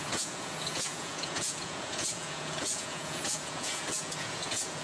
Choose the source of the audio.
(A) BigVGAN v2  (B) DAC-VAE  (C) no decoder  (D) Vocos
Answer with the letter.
D